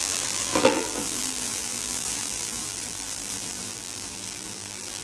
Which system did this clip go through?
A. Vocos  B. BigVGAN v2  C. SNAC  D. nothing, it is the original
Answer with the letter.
B